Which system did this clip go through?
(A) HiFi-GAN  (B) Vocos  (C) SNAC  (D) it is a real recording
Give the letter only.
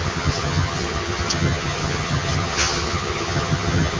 A